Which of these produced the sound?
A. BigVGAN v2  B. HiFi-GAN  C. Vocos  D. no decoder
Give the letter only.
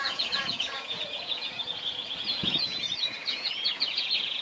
C